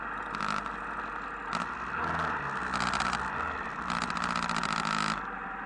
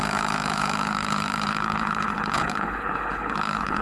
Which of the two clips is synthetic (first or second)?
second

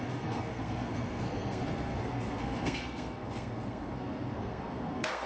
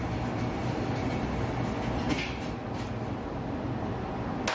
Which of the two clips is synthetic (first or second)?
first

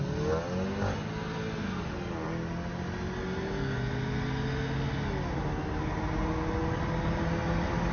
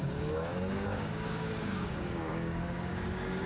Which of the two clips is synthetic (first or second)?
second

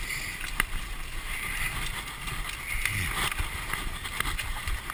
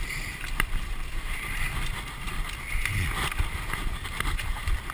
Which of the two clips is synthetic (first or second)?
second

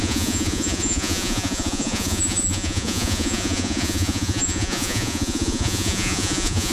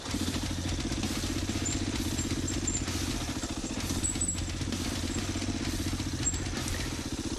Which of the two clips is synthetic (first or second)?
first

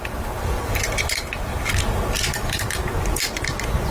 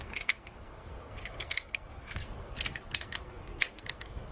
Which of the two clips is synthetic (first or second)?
second